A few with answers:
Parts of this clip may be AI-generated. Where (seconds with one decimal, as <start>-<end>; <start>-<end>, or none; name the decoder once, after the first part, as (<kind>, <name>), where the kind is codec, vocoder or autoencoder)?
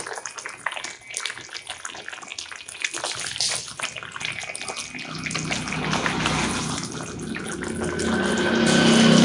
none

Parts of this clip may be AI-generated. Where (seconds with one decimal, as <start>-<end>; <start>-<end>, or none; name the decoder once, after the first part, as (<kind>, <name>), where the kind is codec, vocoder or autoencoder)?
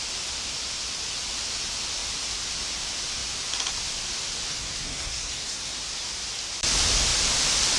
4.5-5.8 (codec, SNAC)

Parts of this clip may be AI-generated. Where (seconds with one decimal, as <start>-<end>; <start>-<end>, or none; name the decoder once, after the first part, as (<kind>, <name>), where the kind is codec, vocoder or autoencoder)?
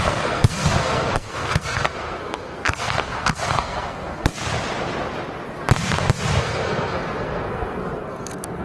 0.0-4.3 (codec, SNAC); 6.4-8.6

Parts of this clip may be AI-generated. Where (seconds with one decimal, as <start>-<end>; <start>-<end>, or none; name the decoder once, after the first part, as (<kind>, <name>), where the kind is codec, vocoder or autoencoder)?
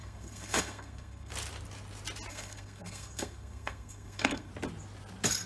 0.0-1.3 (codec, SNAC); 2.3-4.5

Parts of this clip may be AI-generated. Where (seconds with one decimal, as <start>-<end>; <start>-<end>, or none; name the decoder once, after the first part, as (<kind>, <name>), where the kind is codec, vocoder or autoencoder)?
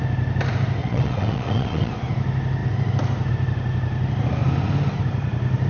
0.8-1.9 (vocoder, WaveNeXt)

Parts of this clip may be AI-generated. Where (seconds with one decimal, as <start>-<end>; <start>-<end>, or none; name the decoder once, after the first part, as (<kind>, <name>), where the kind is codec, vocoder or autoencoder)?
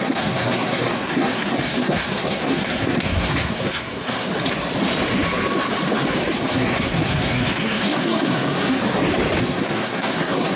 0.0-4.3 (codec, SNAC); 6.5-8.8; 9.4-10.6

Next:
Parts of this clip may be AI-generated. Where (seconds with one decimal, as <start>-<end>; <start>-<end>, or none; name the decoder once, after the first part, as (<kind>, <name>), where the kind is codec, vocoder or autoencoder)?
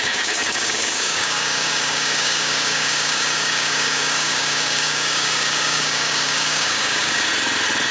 0.0-7.3 (codec, DAC)